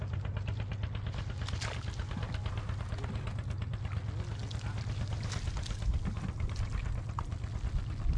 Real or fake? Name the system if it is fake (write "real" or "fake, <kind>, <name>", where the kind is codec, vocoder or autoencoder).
real